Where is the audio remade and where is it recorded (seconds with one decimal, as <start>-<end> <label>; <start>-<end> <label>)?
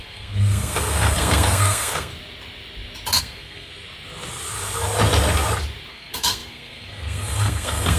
0.0-2.1 remade; 2.1-3.2 recorded; 3.2-3.7 remade; 3.7-5.9 recorded; 5.9-8.0 remade